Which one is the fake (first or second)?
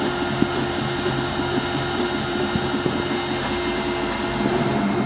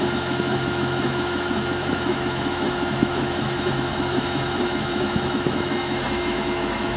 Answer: second